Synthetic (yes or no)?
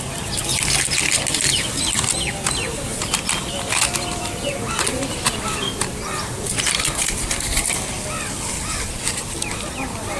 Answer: no